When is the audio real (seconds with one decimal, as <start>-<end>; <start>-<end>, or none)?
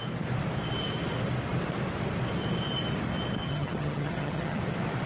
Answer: 0.0-3.4; 4.6-5.1